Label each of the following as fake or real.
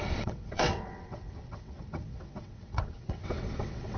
fake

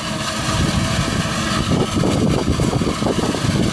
real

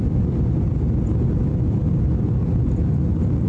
real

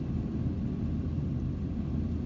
real